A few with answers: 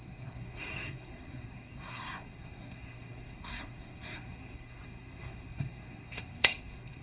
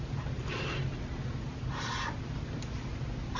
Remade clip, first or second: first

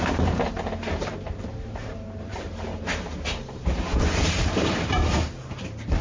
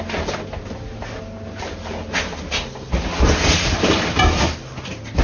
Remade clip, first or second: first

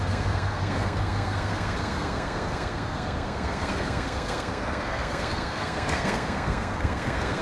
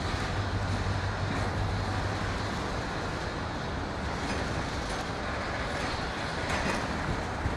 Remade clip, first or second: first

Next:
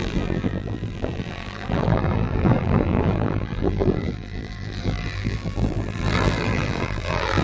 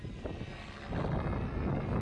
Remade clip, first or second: first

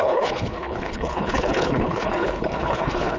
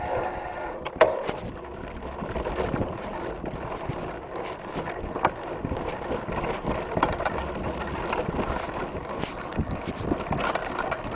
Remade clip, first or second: first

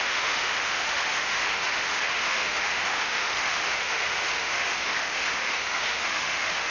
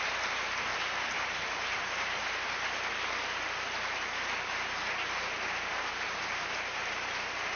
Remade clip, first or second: first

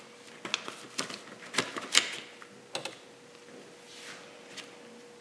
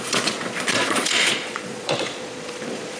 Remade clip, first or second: second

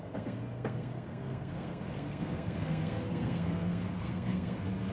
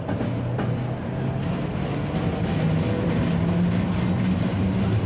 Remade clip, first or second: first